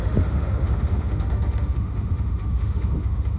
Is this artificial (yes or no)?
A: yes